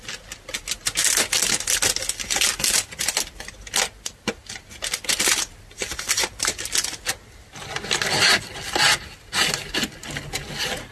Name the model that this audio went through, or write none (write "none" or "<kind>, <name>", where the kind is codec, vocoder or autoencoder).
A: none